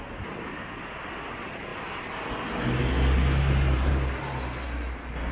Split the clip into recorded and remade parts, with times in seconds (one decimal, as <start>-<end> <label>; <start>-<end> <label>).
0.0-5.3 recorded